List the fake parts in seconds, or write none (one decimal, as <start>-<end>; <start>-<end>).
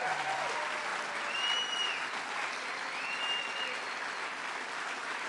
none